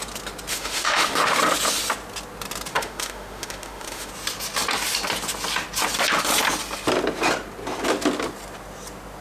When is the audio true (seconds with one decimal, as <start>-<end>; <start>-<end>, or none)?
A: 0.0-0.5; 1.4-2.7; 4.1-9.2